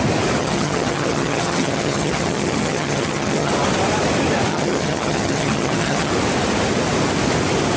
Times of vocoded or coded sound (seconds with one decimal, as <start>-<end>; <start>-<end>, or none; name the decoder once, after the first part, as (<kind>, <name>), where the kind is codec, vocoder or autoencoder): 0.4-3.5 (vocoder, HiFi-GAN); 4.5-6.1